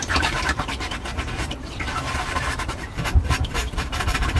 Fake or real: fake